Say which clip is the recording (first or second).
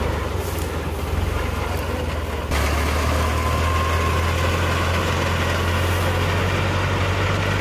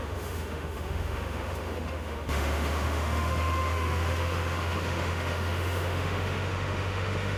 first